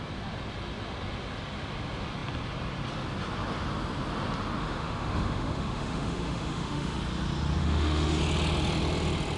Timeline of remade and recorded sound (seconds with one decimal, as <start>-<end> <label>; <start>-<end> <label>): 0.0-4.6 recorded; 4.6-7.0 remade; 7.0-7.6 recorded; 7.6-8.2 remade; 8.2-9.4 recorded